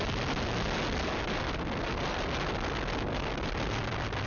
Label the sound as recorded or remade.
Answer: recorded